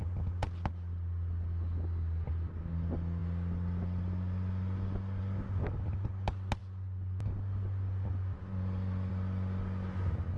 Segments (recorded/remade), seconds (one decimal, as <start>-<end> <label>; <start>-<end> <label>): 0.0-10.4 recorded